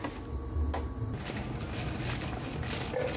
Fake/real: real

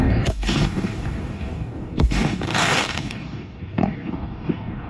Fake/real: fake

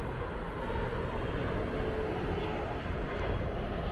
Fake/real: real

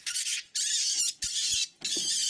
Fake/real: real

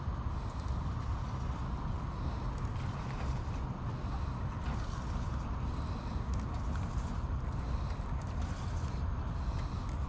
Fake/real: real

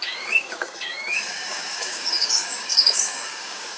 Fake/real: fake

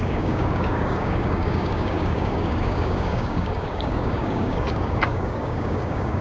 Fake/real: fake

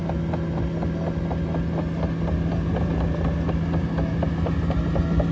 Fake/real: real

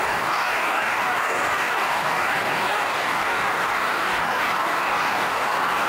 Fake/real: fake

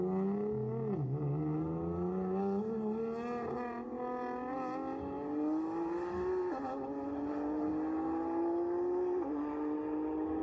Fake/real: real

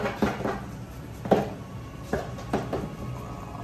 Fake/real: real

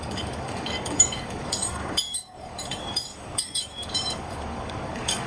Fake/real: fake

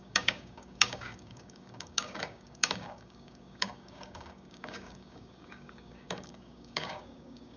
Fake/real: fake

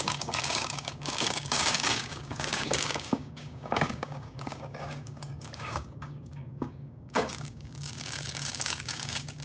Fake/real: fake